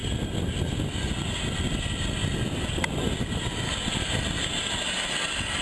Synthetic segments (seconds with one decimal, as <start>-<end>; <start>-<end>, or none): none